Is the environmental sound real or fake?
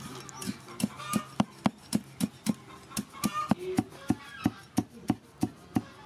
real